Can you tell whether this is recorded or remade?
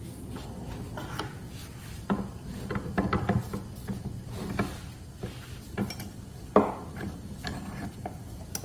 recorded